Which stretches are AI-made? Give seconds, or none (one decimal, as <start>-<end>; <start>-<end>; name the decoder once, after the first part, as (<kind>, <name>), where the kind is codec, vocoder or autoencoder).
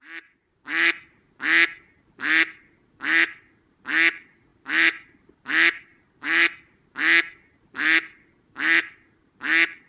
none